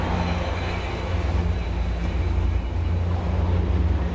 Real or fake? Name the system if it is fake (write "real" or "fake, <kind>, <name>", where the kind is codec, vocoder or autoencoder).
real